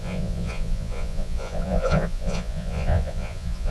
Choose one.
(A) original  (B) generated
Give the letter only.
B